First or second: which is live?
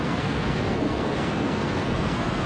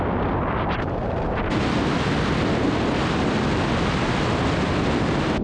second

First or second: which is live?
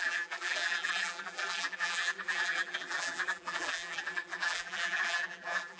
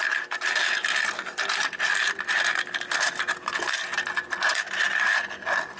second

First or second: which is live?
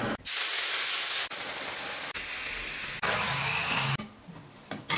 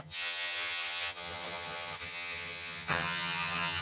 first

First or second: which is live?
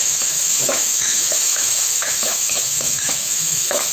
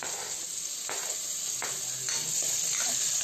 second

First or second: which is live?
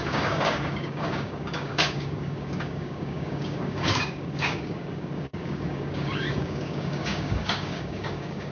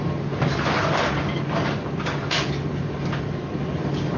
second